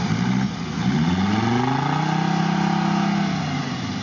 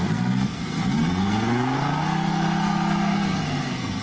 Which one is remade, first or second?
second